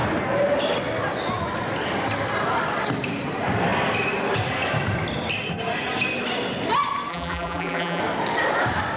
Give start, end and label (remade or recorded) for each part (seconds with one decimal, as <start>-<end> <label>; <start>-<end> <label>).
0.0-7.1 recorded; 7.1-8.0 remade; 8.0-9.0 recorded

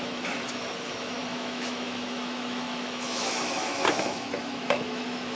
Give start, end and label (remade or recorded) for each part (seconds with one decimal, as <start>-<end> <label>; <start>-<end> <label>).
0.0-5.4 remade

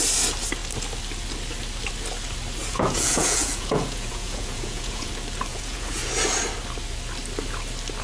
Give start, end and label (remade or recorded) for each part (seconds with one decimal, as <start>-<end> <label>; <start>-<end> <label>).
0.0-2.6 recorded; 2.6-5.1 remade; 5.1-5.5 recorded; 5.5-6.1 remade; 6.1-8.0 recorded

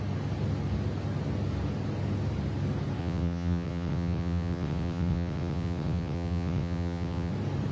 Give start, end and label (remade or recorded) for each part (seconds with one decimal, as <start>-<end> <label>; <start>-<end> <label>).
0.0-3.0 recorded; 3.0-7.3 remade; 7.3-7.7 recorded